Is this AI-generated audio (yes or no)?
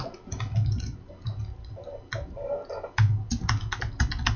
no